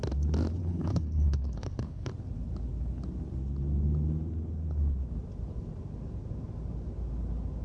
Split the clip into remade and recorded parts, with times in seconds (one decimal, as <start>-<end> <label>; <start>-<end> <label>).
0.0-0.6 recorded; 0.6-2.1 remade; 2.1-7.6 recorded